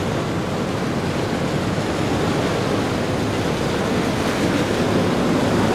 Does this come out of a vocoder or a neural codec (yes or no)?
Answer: no